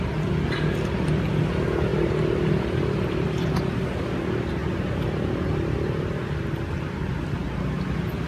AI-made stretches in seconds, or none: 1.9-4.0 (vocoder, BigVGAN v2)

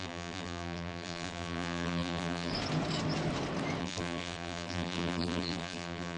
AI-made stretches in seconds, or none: 0.0-2.5 (vocoder, BigVGAN v2); 3.8-6.2

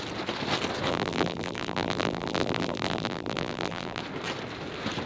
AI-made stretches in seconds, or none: 0.9-4.0 (vocoder, BigVGAN v2)

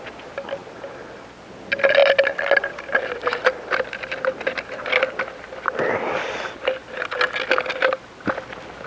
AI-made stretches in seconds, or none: none

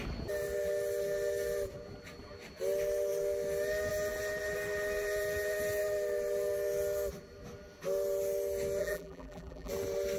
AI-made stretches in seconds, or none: 8.8-9.7 (vocoder, BigVGAN v2)

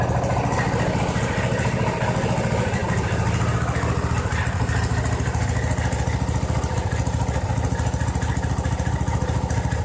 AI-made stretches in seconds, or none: none

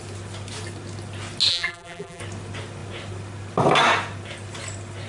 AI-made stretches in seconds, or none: 1.5-2.2 (vocoder, BigVGAN v2)

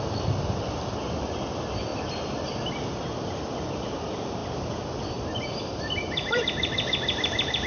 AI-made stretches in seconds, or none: 0.0-1.9 (vocoder, BigVGAN v2); 3.2-4.4; 5.2-7.7